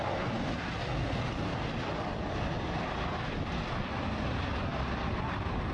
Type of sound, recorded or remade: recorded